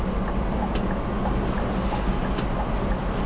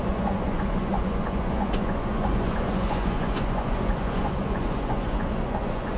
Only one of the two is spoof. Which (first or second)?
second